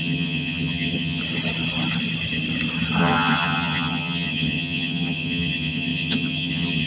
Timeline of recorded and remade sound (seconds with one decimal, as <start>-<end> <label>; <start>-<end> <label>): 0.0-1.2 remade; 1.2-3.0 recorded; 3.0-6.9 remade